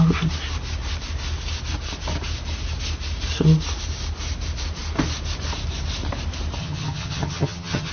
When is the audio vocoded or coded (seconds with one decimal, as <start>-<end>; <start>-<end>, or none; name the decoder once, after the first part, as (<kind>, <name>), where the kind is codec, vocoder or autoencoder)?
6.6-7.9 (vocoder, HiFi-GAN)